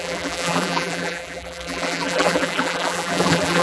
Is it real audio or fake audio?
fake